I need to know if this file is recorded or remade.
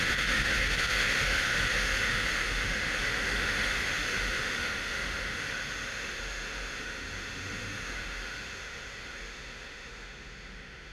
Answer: remade